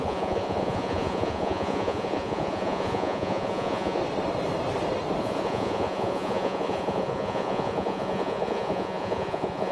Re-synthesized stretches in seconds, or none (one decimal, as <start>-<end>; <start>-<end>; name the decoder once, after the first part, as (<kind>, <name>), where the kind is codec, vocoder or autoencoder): 0.0-4.0 (vocoder, Vocos); 5.2-9.7